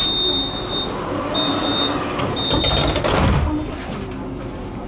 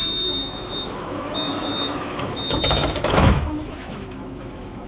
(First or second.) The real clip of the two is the first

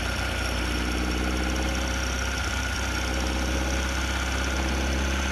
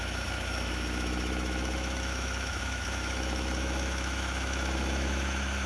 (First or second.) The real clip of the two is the first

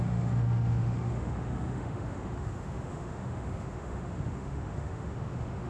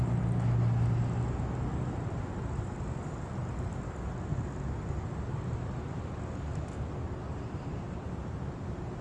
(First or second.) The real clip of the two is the second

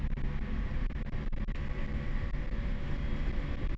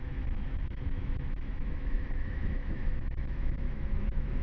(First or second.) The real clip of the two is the first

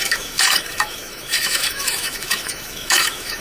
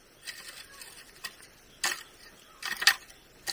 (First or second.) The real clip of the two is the second